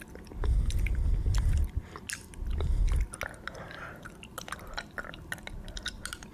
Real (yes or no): yes